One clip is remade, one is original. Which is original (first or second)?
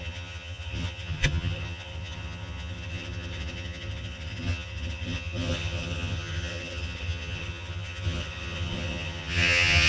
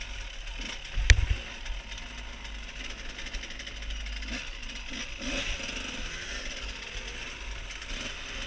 second